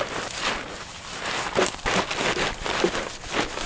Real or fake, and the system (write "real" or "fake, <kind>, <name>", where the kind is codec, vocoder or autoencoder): real